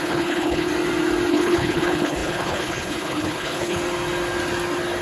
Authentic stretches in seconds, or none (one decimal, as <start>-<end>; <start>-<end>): 0.7-1.3; 3.8-5.0